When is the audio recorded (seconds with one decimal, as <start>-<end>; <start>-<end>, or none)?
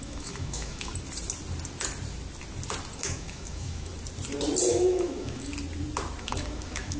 0.9-3.0; 3.9-4.7; 5.5-6.2